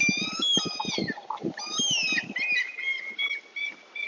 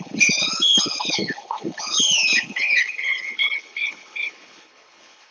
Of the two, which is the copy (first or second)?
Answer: second